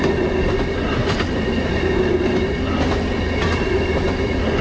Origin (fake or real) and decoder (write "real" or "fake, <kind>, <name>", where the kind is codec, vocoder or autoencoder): real